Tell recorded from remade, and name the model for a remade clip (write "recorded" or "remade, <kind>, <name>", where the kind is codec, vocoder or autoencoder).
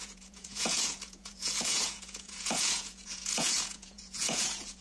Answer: remade, vocoder, Vocos